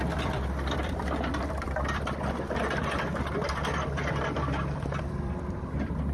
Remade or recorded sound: remade